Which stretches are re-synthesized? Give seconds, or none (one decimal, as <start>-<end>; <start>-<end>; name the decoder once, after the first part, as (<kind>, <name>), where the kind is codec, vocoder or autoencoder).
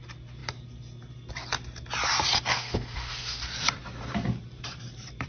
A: 2.5-3.4 (autoencoder, DAC-VAE)